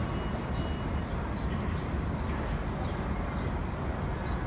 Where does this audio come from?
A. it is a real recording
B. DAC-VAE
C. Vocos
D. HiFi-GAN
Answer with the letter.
A